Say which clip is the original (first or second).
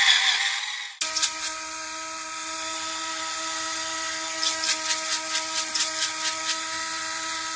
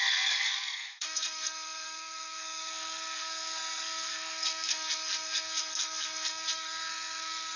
first